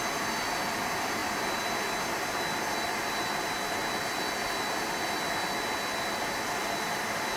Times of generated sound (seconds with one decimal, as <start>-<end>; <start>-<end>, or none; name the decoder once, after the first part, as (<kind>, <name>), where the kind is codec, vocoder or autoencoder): none